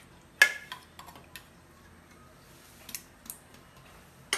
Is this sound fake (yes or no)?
no